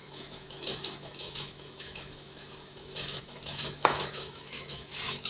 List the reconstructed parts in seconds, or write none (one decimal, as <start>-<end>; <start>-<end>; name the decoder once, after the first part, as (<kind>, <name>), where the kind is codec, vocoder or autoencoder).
0.0-5.3 (autoencoder, DAC-VAE)